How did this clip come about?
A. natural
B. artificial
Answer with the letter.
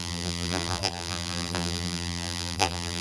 B